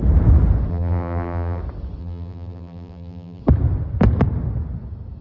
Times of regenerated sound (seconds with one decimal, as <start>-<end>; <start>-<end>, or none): 0.7-1.6; 2.0-3.4